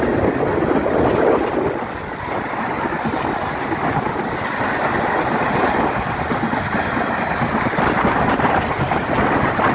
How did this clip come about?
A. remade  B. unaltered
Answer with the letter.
B